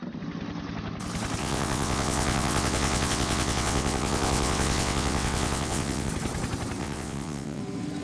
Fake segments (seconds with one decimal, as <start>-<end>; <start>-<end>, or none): 1.4-6.1; 6.8-7.6